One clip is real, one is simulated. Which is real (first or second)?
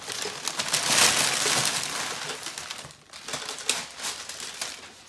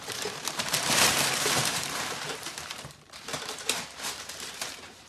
first